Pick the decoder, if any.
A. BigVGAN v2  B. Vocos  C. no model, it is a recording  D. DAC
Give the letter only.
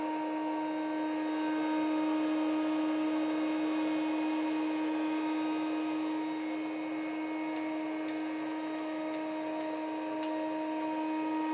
C